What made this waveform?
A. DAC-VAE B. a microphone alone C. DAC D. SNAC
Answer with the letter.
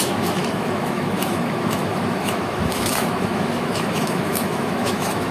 A